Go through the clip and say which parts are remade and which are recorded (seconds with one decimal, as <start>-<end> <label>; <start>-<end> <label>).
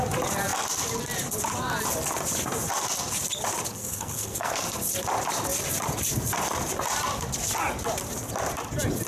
0.0-3.8 recorded; 3.8-4.6 remade; 4.6-9.1 recorded